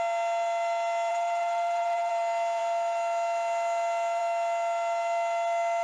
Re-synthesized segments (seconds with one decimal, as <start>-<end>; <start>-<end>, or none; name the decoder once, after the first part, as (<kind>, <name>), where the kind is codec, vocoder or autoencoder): 1.1-2.1 (vocoder, BigVGAN v2)